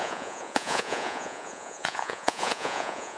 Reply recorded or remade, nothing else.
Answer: remade